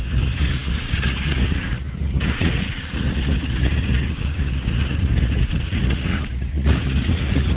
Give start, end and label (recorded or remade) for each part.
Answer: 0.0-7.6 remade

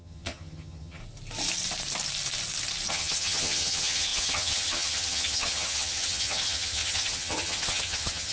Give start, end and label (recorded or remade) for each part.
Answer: 0.0-1.0 remade; 1.0-2.9 recorded; 2.9-8.3 remade

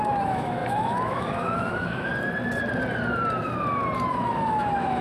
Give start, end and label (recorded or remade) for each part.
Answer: 0.0-2.1 remade; 2.1-4.1 recorded; 4.1-5.0 remade

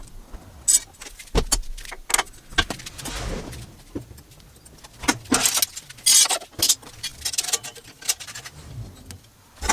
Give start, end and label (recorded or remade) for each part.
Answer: 0.0-9.7 recorded

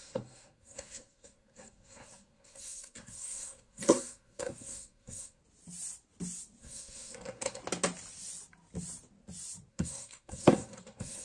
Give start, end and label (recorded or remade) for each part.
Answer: 0.0-5.4 remade; 5.4-6.6 recorded; 6.6-7.6 remade; 7.6-9.7 recorded; 9.7-11.2 remade